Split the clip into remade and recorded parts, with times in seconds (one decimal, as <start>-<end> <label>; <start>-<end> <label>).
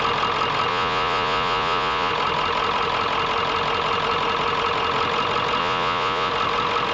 0.0-0.7 recorded; 0.7-2.1 remade; 2.1-5.6 recorded; 5.6-6.3 remade; 6.3-6.9 recorded